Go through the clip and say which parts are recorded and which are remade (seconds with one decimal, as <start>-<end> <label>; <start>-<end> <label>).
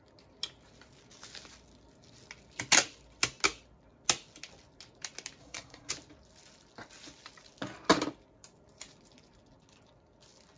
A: 0.0-5.4 recorded; 5.4-5.9 remade; 5.9-10.6 recorded